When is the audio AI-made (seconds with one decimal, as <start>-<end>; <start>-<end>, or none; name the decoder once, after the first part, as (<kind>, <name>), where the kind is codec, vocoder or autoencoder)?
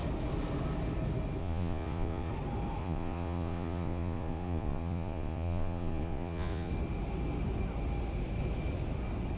1.4-2.3 (vocoder, Vocos); 2.8-6.7